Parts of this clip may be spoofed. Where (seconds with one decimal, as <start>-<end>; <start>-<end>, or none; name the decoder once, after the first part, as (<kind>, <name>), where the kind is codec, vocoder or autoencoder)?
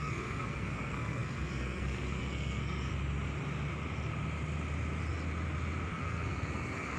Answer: 0.0-2.9 (codec, SNAC); 5.9-7.0